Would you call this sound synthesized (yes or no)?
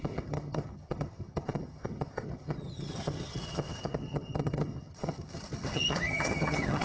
yes